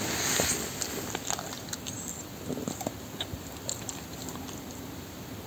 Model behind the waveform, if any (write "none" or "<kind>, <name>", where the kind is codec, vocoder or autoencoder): none